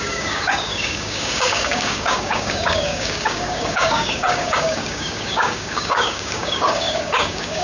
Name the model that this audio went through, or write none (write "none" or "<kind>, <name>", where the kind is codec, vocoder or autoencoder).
codec, DAC